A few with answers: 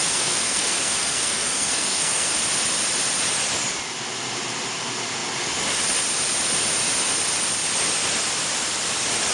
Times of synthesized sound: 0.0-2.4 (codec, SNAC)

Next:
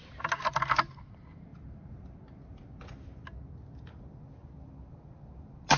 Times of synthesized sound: none

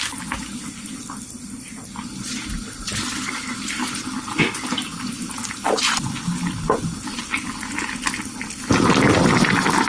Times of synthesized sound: none